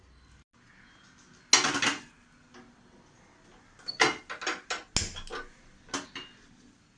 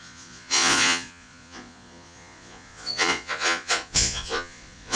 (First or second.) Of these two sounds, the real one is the first